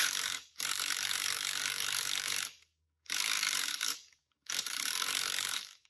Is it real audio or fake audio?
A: fake